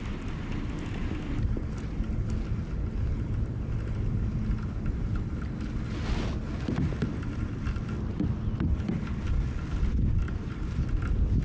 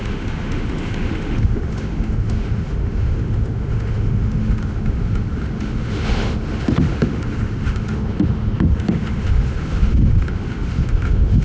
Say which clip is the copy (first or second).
second